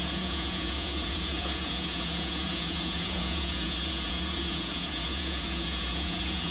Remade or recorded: remade